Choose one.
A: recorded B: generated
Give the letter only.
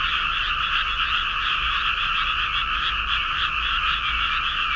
A